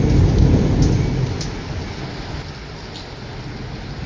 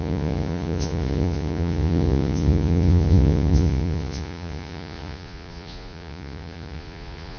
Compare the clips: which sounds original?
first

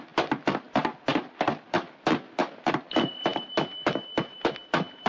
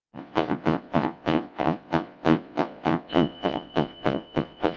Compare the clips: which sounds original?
first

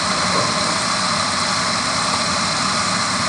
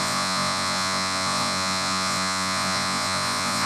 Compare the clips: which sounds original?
first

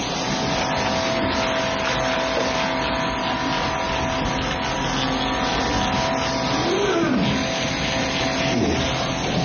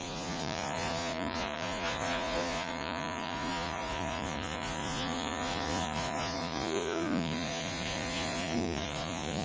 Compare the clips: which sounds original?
first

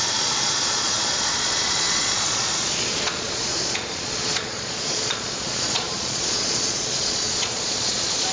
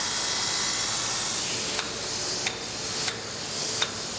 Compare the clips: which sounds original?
second